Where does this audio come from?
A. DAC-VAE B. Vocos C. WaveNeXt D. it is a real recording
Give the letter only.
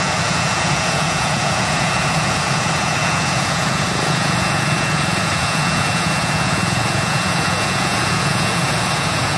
B